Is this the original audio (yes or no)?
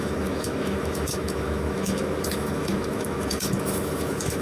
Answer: no